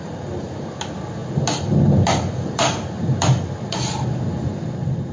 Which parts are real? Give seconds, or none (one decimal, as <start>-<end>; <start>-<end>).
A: 0.0-5.1